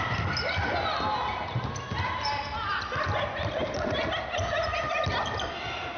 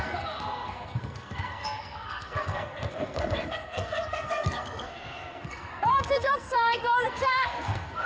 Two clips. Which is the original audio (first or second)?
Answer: first